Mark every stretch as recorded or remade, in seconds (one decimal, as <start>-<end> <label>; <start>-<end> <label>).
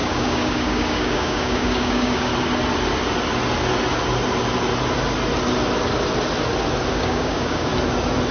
0.0-2.3 remade; 2.3-6.9 recorded; 6.9-7.7 remade; 7.7-8.3 recorded